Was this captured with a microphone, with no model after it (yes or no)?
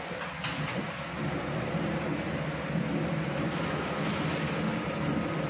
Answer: yes